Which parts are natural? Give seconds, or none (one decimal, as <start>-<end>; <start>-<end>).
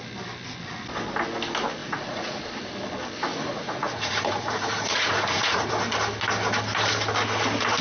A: 0.0-1.8; 2.4-3.3; 5.7-7.8